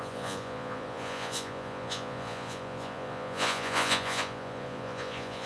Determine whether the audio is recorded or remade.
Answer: remade